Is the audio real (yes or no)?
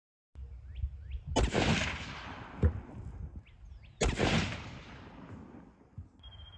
yes